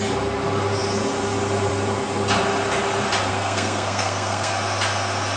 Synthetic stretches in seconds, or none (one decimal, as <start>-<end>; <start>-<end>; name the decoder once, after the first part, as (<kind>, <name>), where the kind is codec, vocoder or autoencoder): 3.3-4.5 (codec, SNAC)